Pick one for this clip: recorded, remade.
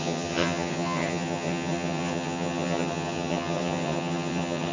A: remade